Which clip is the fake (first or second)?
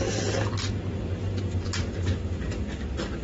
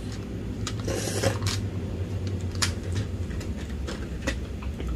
second